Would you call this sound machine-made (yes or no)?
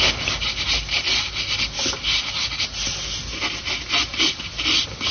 no